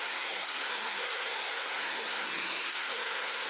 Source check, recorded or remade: remade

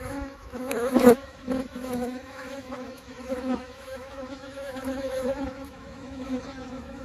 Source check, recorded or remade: remade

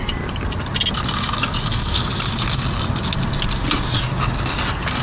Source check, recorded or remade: recorded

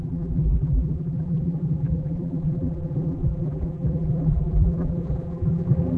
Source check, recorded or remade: remade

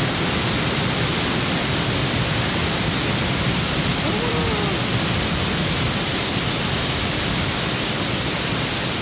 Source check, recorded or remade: recorded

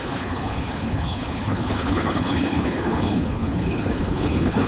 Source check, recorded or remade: remade